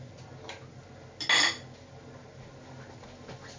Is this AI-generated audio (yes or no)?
no